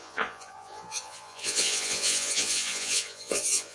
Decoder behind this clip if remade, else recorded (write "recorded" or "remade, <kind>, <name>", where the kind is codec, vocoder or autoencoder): remade, vocoder, Vocos